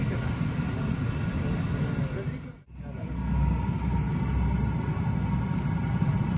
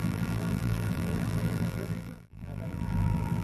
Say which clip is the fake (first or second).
second